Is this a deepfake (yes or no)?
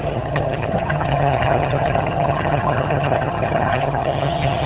yes